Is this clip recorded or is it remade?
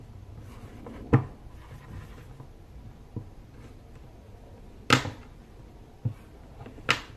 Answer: recorded